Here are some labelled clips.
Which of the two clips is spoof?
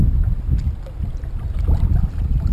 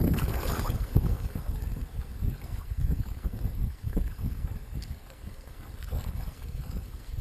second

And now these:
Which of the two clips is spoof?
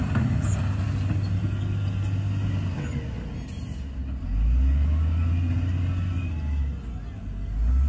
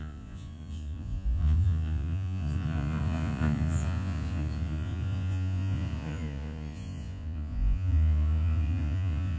second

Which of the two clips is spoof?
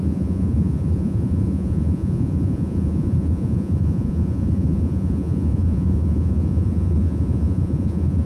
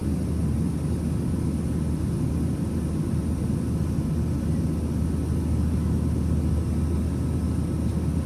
first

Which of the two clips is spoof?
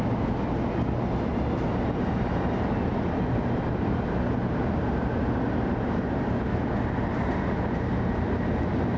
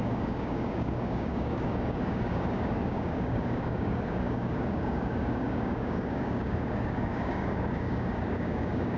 second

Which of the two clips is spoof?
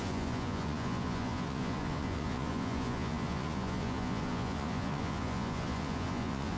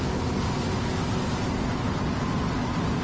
first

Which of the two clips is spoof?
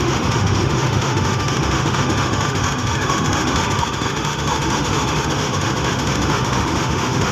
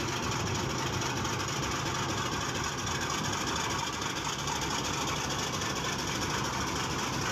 first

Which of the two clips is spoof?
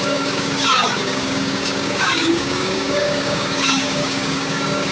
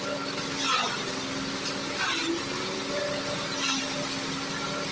first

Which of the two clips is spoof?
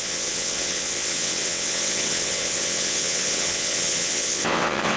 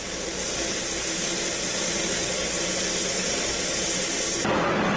first